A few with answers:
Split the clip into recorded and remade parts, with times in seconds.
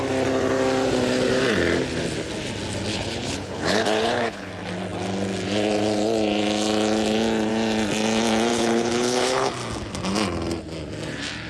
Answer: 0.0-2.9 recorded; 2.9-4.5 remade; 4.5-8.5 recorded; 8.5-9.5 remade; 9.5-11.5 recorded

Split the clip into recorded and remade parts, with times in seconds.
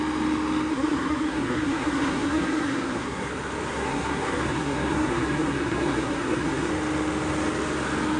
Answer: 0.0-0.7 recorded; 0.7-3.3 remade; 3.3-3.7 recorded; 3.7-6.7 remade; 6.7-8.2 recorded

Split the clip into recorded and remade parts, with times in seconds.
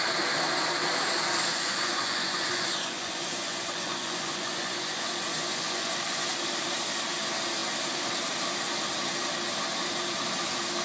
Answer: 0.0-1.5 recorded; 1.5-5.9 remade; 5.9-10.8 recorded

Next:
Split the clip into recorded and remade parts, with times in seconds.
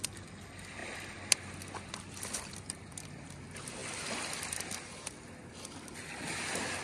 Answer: 0.0-6.8 recorded